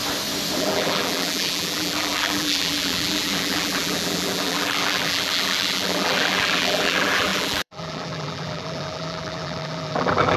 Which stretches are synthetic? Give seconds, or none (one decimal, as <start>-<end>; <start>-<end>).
0.6-10.4